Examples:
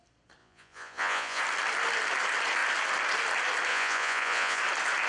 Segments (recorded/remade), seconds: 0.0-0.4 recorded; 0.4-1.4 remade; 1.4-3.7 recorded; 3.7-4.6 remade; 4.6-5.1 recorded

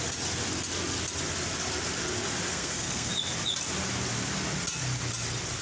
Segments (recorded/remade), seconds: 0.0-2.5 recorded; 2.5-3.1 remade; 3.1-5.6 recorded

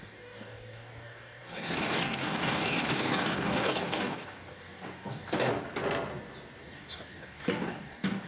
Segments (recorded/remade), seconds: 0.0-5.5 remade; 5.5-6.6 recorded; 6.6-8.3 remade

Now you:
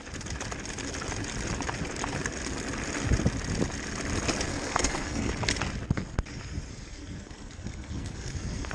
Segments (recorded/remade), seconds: 0.0-4.5 recorded; 4.5-5.3 remade; 5.3-6.7 recorded; 6.7-8.7 remade